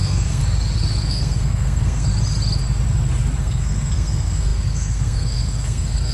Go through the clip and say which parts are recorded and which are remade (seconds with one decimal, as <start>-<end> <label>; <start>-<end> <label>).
0.0-0.4 remade; 0.4-1.0 recorded; 1.0-2.1 remade; 2.1-3.4 recorded; 3.4-6.1 remade